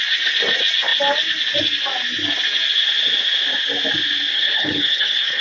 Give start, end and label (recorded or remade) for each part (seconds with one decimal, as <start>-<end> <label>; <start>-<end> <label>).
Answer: 0.0-4.3 recorded; 4.3-5.4 remade

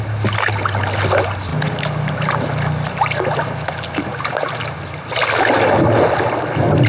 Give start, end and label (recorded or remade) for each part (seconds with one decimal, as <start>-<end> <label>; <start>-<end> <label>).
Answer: 0.0-6.9 recorded

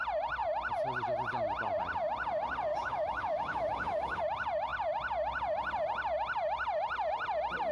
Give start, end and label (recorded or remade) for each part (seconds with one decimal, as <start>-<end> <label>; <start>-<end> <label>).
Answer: 0.0-2.7 recorded; 2.7-4.2 remade; 4.2-7.7 recorded

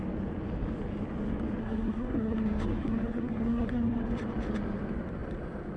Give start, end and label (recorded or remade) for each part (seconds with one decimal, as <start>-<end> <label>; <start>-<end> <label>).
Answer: 0.0-1.6 recorded; 1.6-4.1 remade; 4.1-5.8 recorded

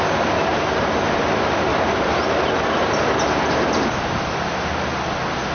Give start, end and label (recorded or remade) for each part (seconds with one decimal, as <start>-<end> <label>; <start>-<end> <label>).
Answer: 0.0-0.5 recorded; 0.5-1.2 remade; 1.2-1.7 recorded; 1.7-2.5 remade; 2.5-3.0 recorded; 3.0-4.7 remade; 4.7-5.5 recorded

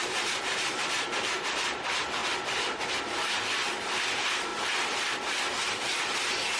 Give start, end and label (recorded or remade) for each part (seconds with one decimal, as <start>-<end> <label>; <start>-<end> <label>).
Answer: 0.0-2.2 remade; 2.2-3.0 recorded; 3.0-4.5 remade; 4.5-5.6 recorded; 5.6-6.6 remade

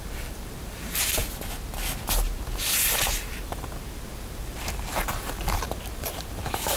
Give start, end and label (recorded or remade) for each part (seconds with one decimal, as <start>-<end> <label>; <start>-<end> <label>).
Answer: 0.0-1.2 remade; 1.2-3.2 recorded; 3.2-6.8 remade